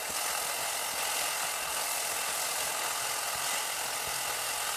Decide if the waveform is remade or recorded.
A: recorded